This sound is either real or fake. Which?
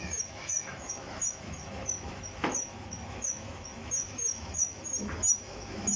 fake